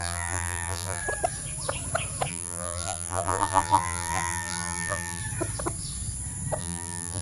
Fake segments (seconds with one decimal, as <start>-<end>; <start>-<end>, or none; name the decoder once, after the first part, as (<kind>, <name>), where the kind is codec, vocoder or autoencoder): 0.0-1.0 (vocoder, BigVGAN v2); 2.3-5.2; 6.6-7.2